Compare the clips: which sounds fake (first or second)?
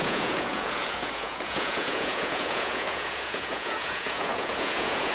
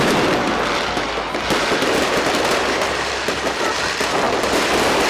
first